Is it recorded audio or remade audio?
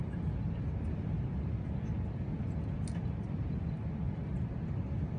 recorded